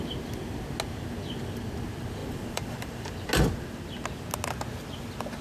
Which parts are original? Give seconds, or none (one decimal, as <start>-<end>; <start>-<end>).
0.0-2.2; 3.1-5.4